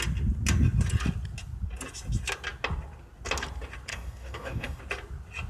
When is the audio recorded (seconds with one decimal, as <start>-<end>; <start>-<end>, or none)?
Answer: 0.0-3.9; 4.8-5.5